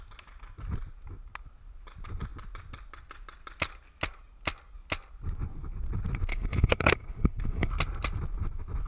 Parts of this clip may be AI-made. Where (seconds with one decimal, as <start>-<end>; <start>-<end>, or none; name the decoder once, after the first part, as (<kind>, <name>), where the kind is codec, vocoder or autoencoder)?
6.3-7.7 (codec, HILCodec)